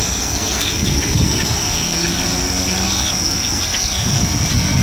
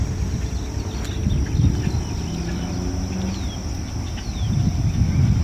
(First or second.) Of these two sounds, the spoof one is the first